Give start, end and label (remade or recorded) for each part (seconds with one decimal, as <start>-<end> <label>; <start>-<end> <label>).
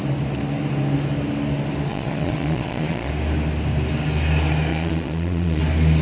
0.0-1.9 recorded; 1.9-3.1 remade; 3.1-4.7 recorded; 4.7-5.6 remade; 5.6-6.0 recorded